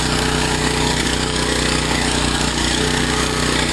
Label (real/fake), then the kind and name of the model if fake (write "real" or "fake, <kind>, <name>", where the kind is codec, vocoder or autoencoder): fake, codec, DAC